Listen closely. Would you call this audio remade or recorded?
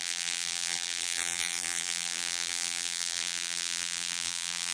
remade